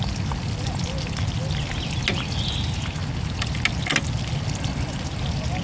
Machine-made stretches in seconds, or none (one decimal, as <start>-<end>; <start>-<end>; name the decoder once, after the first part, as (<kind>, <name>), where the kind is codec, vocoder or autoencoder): none